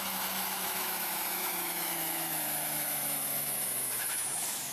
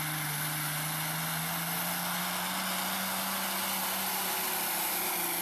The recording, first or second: second